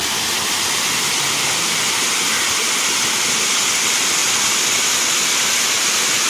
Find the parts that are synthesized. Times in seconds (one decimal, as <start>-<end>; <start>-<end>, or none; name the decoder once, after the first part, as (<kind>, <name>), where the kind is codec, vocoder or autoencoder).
none